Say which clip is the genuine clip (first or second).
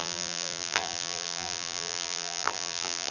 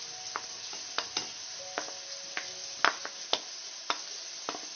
second